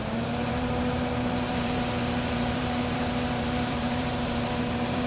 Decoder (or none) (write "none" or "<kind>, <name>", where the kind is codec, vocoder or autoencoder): vocoder, BigVGAN v2